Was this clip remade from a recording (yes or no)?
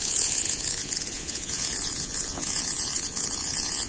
yes